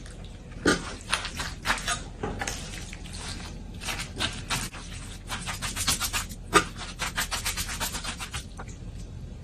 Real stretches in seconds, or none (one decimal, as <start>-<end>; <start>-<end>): 0.0-0.7; 1.3-9.4